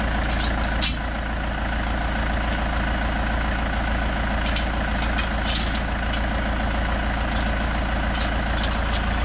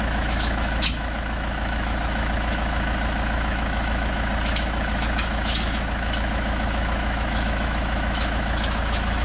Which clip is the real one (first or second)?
first